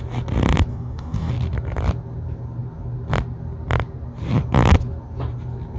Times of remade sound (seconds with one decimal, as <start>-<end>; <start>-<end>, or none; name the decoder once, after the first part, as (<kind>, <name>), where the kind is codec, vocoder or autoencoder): 0.7-1.3 (codec, DAC)